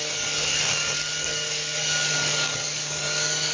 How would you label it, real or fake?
fake